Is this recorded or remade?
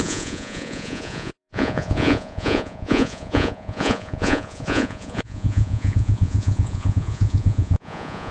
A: remade